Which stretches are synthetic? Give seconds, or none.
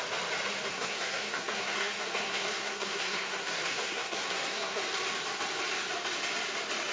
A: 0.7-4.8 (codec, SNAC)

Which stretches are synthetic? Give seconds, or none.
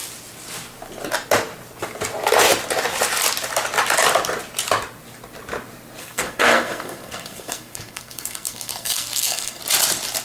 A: 6.0-9.6 (codec, SNAC)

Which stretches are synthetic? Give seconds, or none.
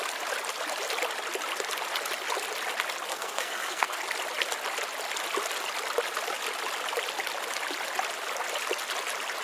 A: 3.1-4.0 (codec, SNAC)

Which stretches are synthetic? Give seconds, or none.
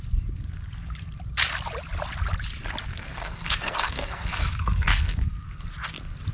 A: 2.8-5.7 (codec, SNAC)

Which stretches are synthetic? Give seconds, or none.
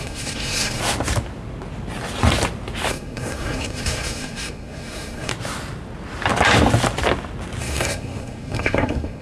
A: 0.0-0.8 (codec, SNAC); 2.9-5.3; 7.6-9.2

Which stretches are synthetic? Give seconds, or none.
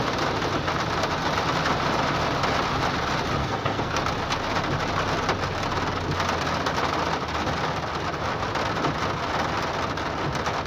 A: 3.4-4.0 (codec, SNAC)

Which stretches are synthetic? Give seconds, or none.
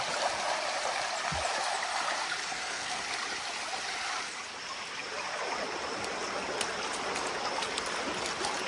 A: 2.5-3.0 (codec, SNAC)